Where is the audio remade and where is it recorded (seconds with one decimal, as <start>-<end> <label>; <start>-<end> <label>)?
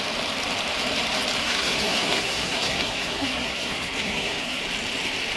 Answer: 0.0-1.4 recorded; 1.4-4.6 remade; 4.6-5.4 recorded